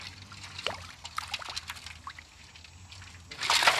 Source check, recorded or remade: recorded